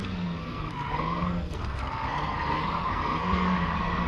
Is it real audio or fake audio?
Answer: fake